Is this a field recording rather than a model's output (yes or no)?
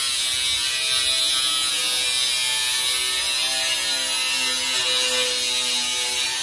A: yes